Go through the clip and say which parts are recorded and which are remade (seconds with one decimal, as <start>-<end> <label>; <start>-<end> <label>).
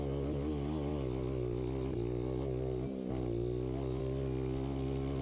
0.0-5.2 recorded